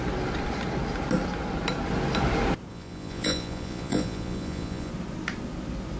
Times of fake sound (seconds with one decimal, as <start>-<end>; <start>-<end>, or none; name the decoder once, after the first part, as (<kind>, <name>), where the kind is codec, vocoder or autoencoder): 2.7-4.9 (vocoder, Vocos)